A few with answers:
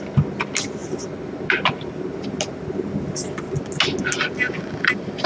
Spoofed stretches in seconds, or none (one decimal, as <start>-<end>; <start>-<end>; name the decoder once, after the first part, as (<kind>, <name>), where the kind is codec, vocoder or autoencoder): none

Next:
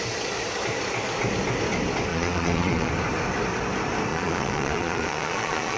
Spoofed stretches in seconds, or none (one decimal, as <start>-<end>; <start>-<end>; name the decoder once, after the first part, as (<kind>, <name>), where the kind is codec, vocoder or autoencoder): 2.1-2.9 (vocoder, Vocos); 4.1-5.8

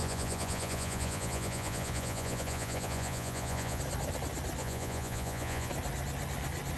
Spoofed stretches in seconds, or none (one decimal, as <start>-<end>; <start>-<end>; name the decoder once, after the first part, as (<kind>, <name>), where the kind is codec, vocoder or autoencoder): 0.0-3.8 (vocoder, Vocos); 4.6-5.7

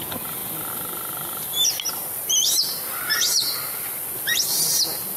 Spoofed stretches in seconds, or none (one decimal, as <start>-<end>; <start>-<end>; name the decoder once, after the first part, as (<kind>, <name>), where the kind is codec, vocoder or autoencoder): none

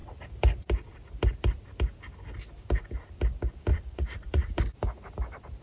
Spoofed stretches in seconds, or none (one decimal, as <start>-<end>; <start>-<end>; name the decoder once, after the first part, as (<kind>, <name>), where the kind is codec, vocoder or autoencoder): 3.7-4.6 (vocoder, Vocos)